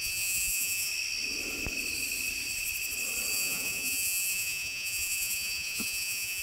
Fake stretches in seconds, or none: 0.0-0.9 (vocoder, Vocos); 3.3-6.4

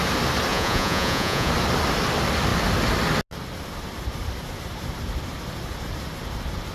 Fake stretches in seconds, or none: 0.5-1.5 (vocoder, Vocos)

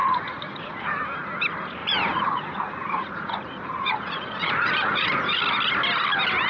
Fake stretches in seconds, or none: 0.0-1.0 (vocoder, Vocos); 1.8-5.4

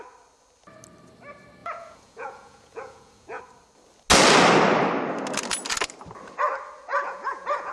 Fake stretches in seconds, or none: 1.6-3.4 (vocoder, Vocos); 6.9-7.7

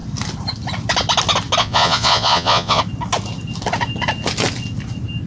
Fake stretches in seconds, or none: 1.6-2.8 (vocoder, Vocos)